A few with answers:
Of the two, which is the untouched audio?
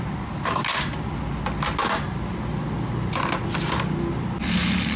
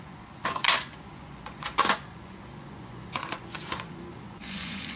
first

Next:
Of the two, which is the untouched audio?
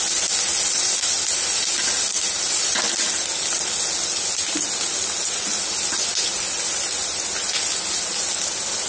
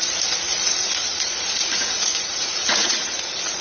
first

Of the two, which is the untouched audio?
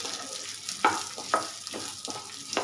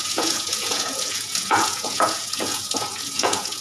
first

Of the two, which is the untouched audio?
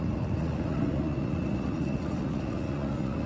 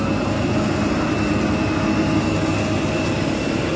second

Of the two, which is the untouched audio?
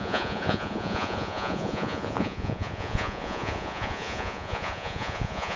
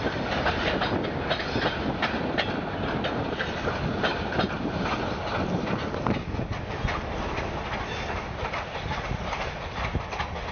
second